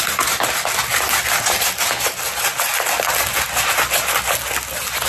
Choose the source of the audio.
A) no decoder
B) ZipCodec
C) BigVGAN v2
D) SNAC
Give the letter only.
A